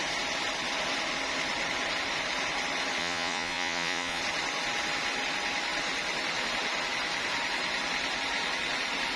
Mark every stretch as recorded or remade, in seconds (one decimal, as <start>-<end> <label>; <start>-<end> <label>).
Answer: 0.0-3.0 recorded; 3.0-4.2 remade; 4.2-9.2 recorded